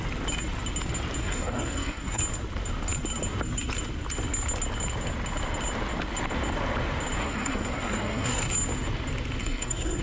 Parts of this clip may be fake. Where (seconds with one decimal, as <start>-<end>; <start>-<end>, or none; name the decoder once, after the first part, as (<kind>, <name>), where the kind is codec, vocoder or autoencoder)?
1.2-2.2 (codec, SNAC); 7.2-8.4; 9.4-10.0